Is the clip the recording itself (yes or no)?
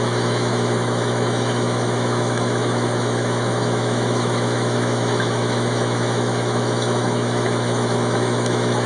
no